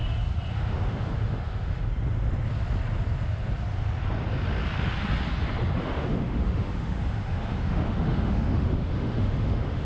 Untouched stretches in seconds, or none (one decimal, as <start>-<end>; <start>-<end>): 0.0-0.5; 1.9-5.8